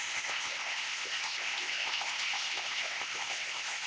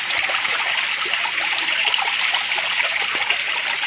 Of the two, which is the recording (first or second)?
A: second